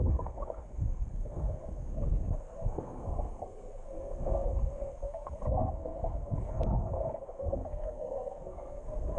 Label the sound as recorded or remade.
remade